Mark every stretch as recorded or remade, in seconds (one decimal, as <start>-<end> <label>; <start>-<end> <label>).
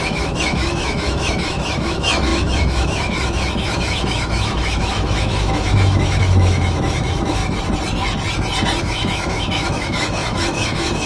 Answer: 0.0-7.4 remade; 7.4-8.8 recorded; 8.8-11.1 remade